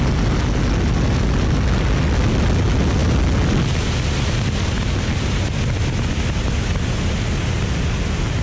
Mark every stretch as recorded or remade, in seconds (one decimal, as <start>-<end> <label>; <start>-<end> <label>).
0.0-8.4 recorded